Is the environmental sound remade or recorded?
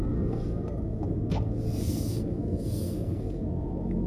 remade